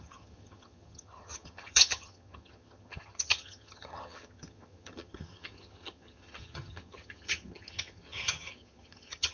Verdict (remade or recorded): remade